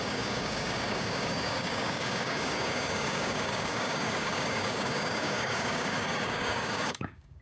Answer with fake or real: fake